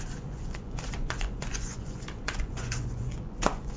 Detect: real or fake fake